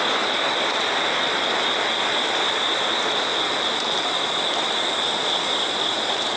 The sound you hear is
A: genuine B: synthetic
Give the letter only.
A